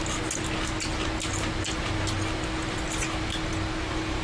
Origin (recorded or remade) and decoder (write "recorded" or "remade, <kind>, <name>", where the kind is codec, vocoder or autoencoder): recorded